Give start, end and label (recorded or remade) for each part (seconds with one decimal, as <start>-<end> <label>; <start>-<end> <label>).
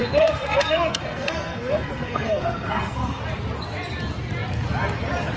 0.0-3.2 remade; 3.2-5.4 recorded